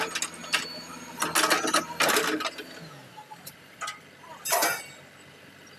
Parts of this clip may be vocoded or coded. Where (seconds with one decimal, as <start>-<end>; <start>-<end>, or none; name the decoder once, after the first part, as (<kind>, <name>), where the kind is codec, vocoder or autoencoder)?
3.0-3.8 (vocoder, BigVGAN v2); 4.3-4.8